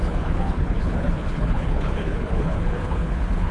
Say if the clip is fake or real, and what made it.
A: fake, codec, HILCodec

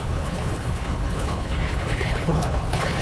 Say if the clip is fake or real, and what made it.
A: fake, codec, HILCodec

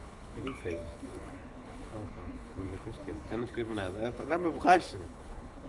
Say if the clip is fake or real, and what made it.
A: fake, codec, HILCodec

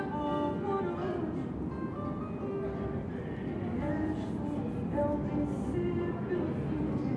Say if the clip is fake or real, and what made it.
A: real